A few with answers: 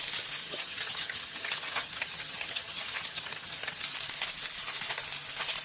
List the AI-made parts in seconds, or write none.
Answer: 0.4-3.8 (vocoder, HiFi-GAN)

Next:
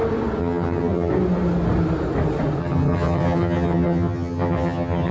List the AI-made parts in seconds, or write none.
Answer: 0.4-1.1 (vocoder, HiFi-GAN); 2.6-5.1

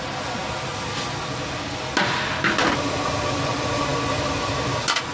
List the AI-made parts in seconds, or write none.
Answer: none

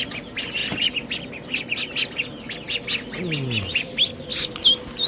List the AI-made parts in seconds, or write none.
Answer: none

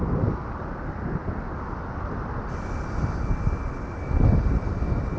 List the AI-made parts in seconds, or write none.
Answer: none